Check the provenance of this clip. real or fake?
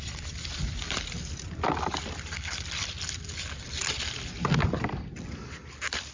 fake